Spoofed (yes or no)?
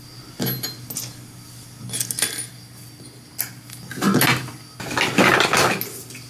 no